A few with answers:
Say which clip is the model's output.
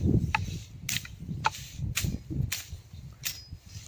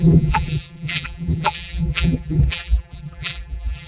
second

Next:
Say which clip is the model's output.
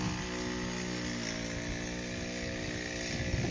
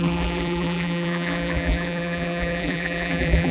second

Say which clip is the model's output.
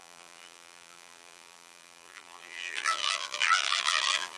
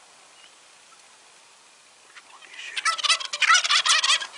first